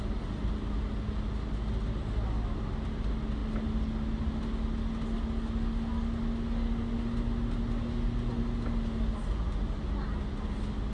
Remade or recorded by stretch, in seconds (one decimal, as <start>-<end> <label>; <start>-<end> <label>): 0.0-10.9 recorded